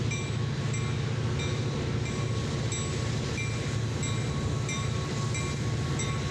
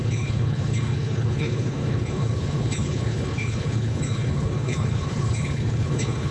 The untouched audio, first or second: first